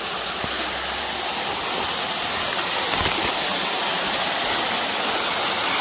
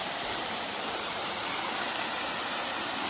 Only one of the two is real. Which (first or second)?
first